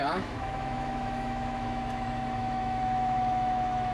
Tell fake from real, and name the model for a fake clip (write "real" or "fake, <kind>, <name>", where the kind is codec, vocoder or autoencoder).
fake, autoencoder, DAC-VAE